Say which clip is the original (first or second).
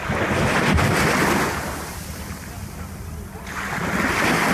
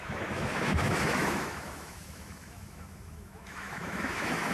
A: first